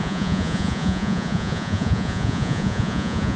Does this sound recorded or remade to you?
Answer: remade